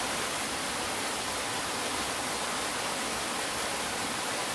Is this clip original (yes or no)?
yes